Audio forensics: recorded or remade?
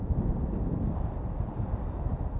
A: recorded